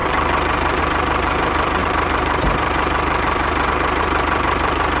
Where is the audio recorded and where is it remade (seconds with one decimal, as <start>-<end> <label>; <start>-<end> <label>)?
0.0-5.0 remade